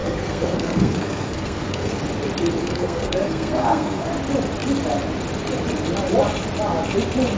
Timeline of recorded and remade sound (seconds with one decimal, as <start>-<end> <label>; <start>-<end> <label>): 0.0-2.0 remade; 2.0-2.6 recorded; 2.6-4.1 remade; 4.1-7.4 recorded